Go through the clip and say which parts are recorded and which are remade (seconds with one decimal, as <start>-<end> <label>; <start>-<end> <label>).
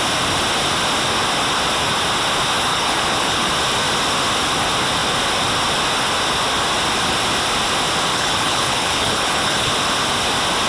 0.0-2.7 recorded; 2.7-3.5 remade; 3.5-8.1 recorded; 8.1-9.7 remade; 9.7-10.7 recorded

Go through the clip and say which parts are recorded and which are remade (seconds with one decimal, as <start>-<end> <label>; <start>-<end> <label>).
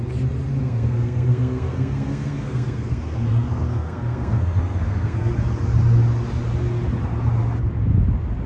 0.0-0.6 recorded; 0.6-5.3 remade; 5.3-8.5 recorded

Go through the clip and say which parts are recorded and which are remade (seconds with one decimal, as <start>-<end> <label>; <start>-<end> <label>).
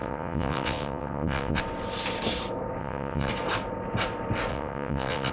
0.0-1.6 remade; 1.6-2.8 recorded; 2.8-3.3 remade; 3.3-4.5 recorded; 4.5-5.3 remade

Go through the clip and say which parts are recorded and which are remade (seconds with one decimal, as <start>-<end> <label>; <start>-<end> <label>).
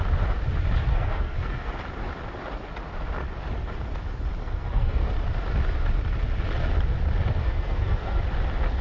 0.0-0.9 recorded; 0.9-1.7 remade; 1.7-4.4 recorded; 4.4-5.1 remade; 5.1-7.4 recorded; 7.4-8.2 remade; 8.2-8.8 recorded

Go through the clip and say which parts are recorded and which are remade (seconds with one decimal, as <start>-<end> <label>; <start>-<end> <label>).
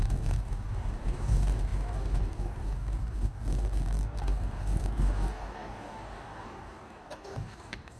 0.0-8.0 remade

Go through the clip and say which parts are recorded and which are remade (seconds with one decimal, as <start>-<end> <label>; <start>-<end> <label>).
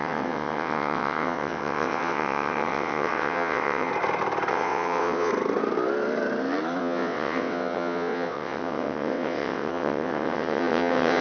0.0-3.9 remade; 3.9-4.5 recorded; 4.5-5.3 remade; 5.3-6.8 recorded; 6.8-11.2 remade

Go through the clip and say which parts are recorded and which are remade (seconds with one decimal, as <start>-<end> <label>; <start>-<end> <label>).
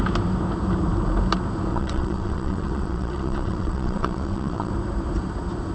0.0-1.7 recorded; 1.7-4.7 remade; 4.7-5.7 recorded